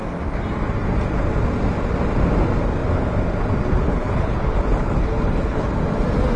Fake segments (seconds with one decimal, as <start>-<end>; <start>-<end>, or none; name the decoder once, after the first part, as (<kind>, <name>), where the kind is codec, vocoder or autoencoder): 3.8-5.7 (codec, HILCodec)